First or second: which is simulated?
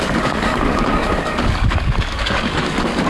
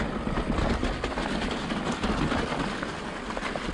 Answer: first